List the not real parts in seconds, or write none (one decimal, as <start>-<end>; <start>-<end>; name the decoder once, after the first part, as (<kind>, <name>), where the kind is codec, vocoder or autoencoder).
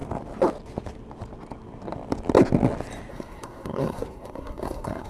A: 3.1-5.1 (codec, SNAC)